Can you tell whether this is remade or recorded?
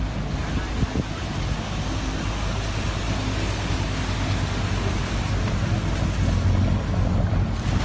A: recorded